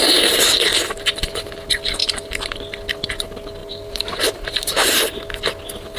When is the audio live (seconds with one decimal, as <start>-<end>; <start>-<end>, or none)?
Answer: 0.0-2.0; 2.6-3.6; 5.1-6.0